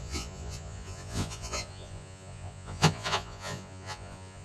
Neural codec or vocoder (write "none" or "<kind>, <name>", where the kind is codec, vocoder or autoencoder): vocoder, Vocos